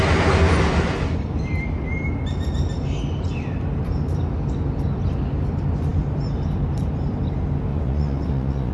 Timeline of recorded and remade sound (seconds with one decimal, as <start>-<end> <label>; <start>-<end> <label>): 0.0-7.7 recorded; 7.7-8.7 remade